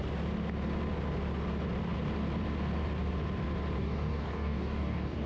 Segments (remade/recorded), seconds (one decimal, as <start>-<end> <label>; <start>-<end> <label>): 0.0-3.8 recorded; 3.8-5.3 remade